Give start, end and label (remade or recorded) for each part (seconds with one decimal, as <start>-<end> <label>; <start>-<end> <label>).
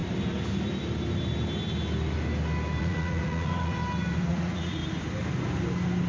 0.0-2.8 recorded; 2.8-3.8 remade; 3.8-4.3 recorded; 4.3-4.8 remade; 4.8-6.1 recorded